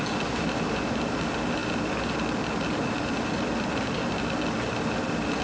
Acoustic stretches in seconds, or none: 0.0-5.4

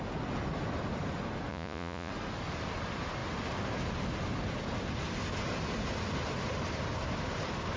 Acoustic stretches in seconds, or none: 0.0-1.5; 2.1-7.8

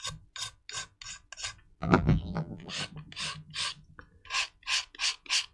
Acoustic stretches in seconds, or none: 0.0-1.8; 2.7-5.5

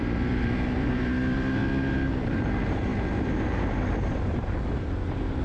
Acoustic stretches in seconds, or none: 1.6-2.2

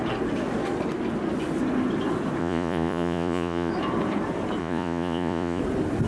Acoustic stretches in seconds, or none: 0.0-2.4; 3.7-4.6; 5.6-6.1

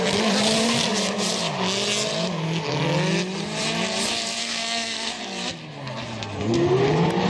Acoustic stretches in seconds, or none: 0.0-4.4; 5.2-7.3

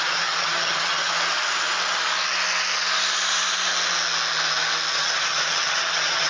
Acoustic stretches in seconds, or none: 1.1-4.9

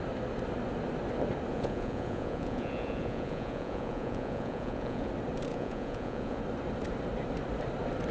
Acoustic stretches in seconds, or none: 0.0-1.5; 5.1-5.5; 6.4-8.1